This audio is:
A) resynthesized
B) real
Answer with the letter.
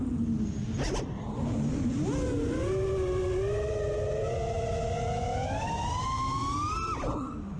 B